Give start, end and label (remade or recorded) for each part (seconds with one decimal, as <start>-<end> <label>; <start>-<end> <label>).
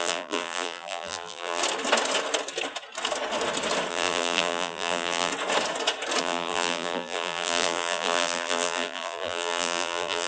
0.0-1.6 remade; 1.6-3.9 recorded; 3.9-5.3 remade; 5.3-6.2 recorded; 6.2-10.3 remade